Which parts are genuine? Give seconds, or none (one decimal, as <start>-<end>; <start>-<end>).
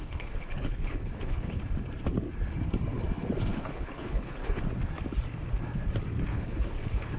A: 1.6-3.5; 4.6-6.3